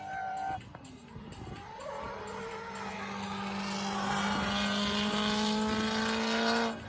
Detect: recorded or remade recorded